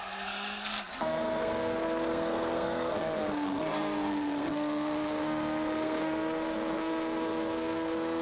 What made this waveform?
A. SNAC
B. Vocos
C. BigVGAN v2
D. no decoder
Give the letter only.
A